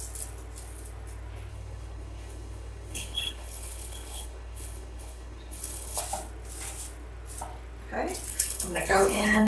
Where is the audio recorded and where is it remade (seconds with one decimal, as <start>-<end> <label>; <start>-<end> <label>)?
0.0-1.5 recorded; 1.5-6.0 remade; 6.0-8.3 recorded; 8.3-9.5 remade